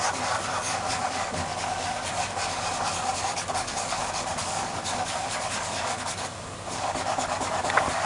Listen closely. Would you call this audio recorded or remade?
remade